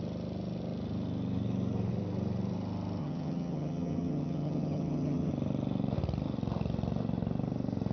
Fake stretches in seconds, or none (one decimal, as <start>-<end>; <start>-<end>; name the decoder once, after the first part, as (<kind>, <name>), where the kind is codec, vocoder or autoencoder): 3.0-5.3 (vocoder, HiFi-GAN)